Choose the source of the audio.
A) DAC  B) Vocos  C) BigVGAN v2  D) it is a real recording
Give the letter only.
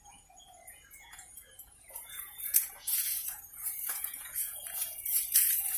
B